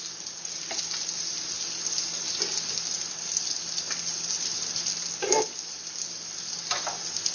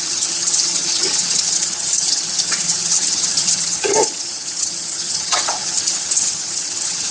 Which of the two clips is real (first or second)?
first